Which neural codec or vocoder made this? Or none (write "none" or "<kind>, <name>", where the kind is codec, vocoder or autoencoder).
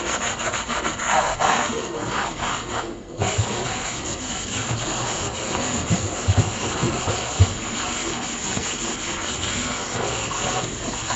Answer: codec, SNAC